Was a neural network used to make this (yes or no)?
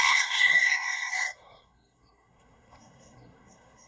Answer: yes